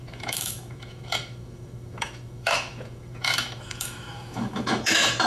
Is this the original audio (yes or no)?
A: no